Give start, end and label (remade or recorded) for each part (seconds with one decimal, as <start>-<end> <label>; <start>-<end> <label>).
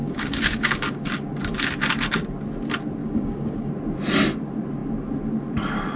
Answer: 0.0-1.1 remade; 1.1-3.0 recorded; 3.0-3.7 remade; 3.7-6.0 recorded